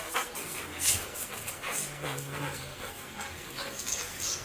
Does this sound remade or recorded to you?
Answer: remade